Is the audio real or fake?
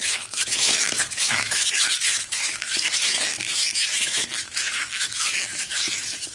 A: fake